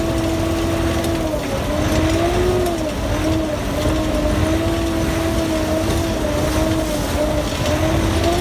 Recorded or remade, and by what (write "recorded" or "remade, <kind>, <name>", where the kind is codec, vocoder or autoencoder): recorded